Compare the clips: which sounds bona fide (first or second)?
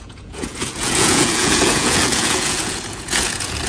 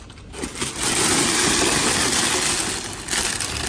second